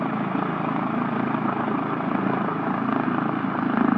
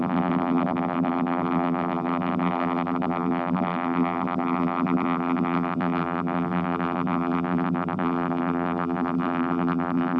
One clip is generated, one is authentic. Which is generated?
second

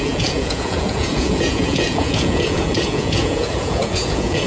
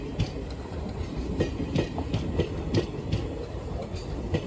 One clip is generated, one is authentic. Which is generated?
first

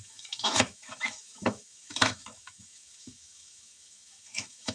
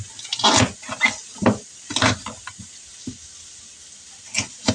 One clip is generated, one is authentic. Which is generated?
first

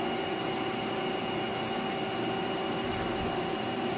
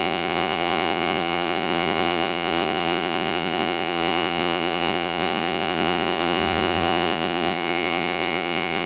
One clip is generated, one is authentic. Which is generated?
second